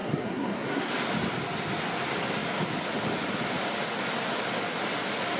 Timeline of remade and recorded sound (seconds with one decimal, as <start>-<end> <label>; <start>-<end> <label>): 0.0-0.9 remade; 0.9-5.4 recorded